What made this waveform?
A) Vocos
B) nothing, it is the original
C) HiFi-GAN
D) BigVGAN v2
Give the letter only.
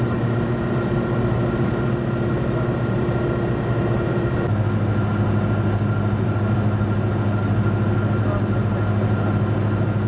B